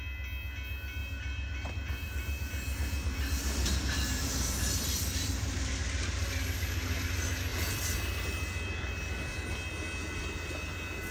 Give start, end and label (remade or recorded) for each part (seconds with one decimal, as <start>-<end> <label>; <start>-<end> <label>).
0.0-1.0 recorded; 1.0-5.7 remade; 5.7-7.5 recorded; 7.5-8.2 remade; 8.2-11.1 recorded